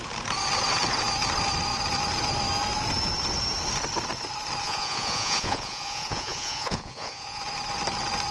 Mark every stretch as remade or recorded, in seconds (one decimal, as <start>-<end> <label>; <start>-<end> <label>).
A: 0.0-4.6 recorded; 4.6-7.4 remade; 7.4-8.3 recorded